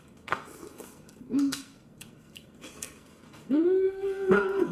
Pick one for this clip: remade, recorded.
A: remade